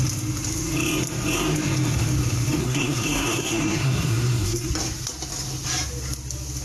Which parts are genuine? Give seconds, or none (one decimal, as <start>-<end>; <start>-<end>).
0.0-2.6; 4.7-6.6